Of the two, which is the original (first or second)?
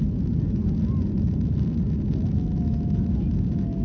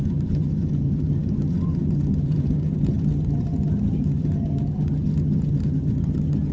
first